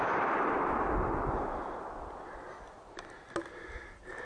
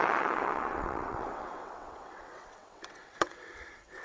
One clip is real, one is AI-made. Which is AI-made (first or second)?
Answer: second